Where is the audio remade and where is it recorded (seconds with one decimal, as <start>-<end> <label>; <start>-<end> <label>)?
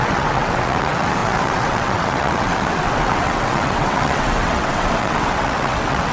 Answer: 0.0-6.1 remade